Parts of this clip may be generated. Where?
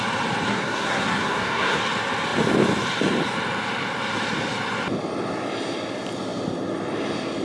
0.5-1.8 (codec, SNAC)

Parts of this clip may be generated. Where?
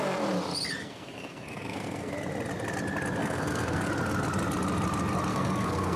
0.8-2.1 (codec, SNAC); 3.2-3.9; 5.3-6.0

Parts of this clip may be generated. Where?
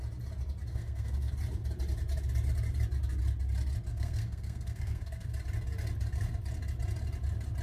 0.7-1.3 (codec, SNAC); 3.9-5.3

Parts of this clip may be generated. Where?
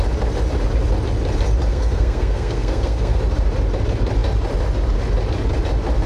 1.7-3.2 (codec, SNAC)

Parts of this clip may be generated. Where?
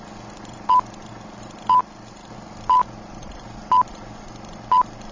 none